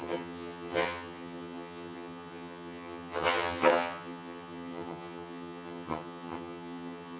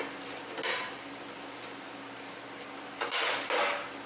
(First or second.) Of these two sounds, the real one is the second